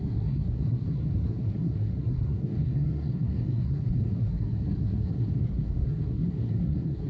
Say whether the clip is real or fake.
fake